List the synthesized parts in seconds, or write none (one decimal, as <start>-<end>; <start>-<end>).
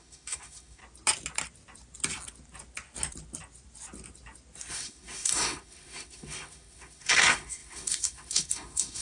0.0-0.8; 4.7-9.0